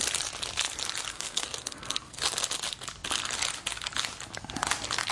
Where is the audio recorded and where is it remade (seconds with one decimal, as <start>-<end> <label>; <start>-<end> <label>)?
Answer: 0.0-1.1 recorded; 1.1-2.2 remade; 2.2-5.1 recorded